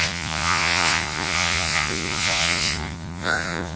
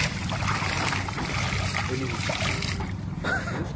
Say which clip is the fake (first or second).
first